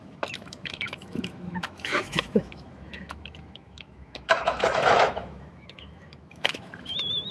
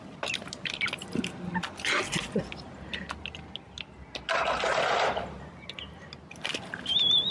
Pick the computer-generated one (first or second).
first